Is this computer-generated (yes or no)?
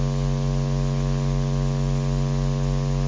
no